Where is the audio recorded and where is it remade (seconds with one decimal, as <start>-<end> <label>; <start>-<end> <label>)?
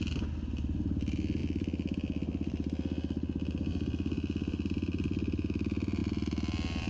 0.0-6.9 recorded